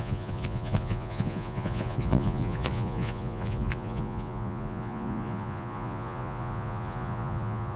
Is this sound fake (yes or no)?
yes